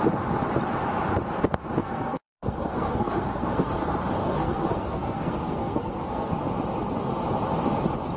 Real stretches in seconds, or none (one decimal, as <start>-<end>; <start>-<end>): 0.0-1.8; 3.8-4.2; 6.3-8.2